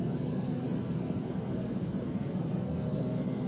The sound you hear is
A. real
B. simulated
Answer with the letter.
B